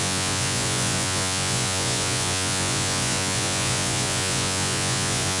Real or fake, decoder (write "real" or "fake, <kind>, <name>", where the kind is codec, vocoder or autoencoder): fake, vocoder, Vocos